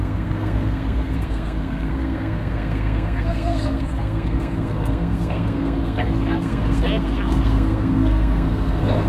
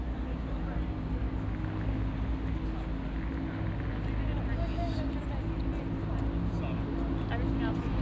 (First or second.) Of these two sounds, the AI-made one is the first